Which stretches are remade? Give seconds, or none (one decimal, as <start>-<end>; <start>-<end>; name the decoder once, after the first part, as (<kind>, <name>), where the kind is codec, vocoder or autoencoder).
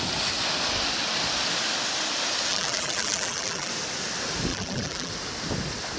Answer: 2.5-3.7 (vocoder, BigVGAN v2); 4.5-5.1